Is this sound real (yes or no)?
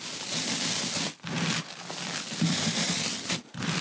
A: yes